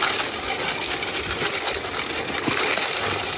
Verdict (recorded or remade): recorded